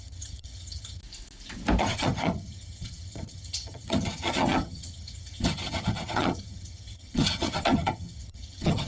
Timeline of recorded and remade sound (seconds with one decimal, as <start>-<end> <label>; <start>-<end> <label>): 0.0-1.0 remade; 1.0-1.8 recorded; 1.8-8.9 remade